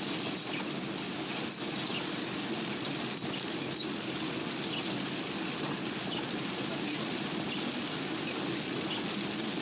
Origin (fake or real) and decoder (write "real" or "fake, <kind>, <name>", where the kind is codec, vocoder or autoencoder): real